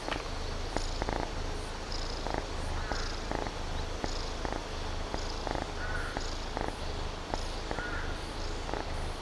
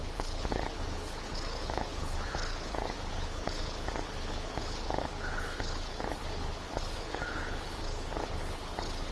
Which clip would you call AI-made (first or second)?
second